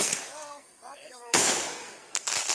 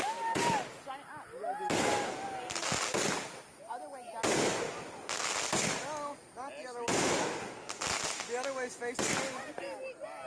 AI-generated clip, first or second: first